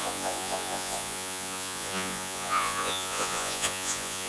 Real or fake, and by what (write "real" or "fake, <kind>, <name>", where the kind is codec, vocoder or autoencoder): fake, vocoder, Vocos